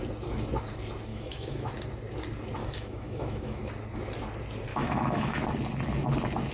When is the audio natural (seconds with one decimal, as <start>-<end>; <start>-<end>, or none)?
0.0-1.1; 1.7-2.6; 3.7-4.7; 5.4-6.5